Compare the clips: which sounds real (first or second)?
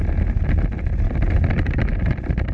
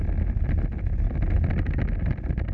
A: second